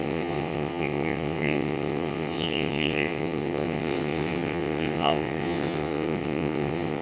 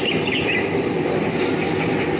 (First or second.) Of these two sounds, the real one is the second